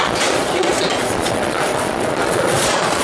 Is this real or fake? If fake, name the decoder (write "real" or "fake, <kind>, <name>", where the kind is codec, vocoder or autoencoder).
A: fake, vocoder, Vocos